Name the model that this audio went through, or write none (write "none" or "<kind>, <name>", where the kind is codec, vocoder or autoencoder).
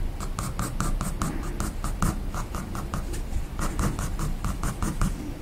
none